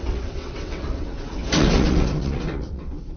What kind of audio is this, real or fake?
fake